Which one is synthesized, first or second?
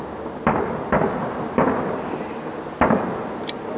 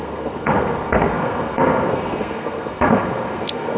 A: second